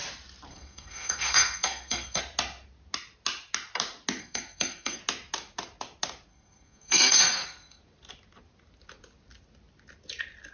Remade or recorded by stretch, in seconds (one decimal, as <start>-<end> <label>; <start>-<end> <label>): 0.0-0.5 recorded; 0.5-2.2 remade; 2.2-4.2 recorded; 4.2-5.0 remade; 5.0-6.3 recorded; 6.3-7.8 remade; 7.8-10.5 recorded